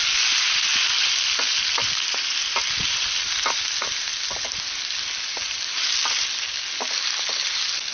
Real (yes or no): yes